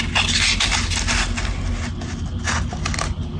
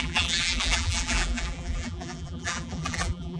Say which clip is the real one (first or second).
first